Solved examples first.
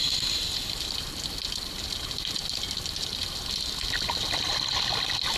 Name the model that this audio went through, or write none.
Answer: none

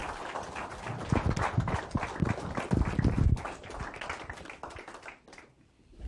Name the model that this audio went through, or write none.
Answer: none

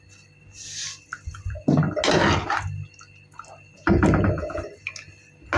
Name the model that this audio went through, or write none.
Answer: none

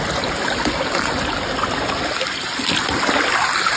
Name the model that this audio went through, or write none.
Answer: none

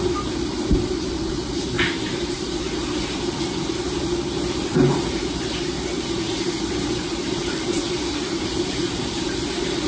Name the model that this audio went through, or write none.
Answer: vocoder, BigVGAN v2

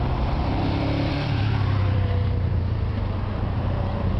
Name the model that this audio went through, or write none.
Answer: vocoder, BigVGAN v2